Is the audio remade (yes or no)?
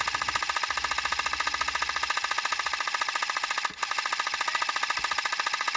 no